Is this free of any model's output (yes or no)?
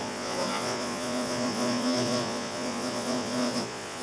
no